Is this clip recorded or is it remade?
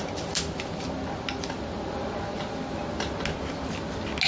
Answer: recorded